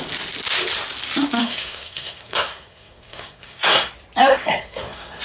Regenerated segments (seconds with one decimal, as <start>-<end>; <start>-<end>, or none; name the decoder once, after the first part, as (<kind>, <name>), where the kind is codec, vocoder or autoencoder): 1.4-3.9 (codec, SNAC); 4.3-5.2